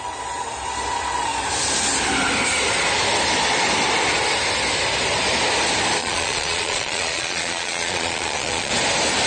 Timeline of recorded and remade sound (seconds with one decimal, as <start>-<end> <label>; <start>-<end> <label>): 0.0-6.0 recorded; 6.0-8.7 remade; 8.7-9.3 recorded